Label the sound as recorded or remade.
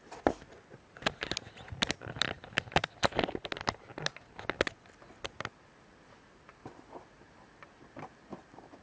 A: recorded